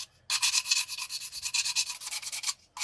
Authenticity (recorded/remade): recorded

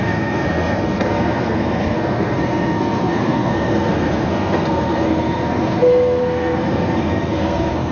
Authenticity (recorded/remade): remade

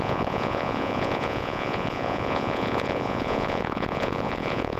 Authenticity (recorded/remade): remade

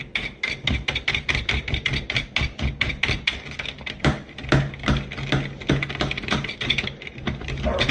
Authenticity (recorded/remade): recorded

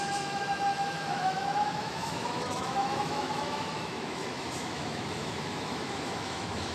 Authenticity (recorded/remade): remade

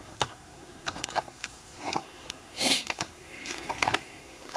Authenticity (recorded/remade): remade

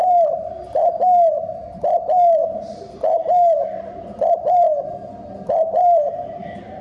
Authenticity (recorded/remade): remade